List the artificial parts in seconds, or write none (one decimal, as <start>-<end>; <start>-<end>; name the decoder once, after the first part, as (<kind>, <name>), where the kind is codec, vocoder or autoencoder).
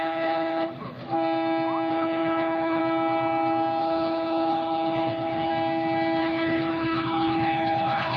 0.0-1.0 (codec, HILCodec); 1.9-2.8; 3.8-5.5; 6.2-8.2